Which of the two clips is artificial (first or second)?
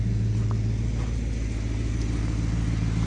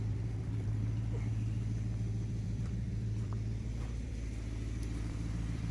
second